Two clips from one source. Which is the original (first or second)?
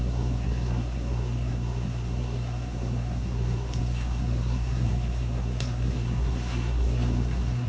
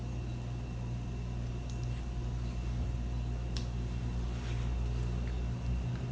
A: second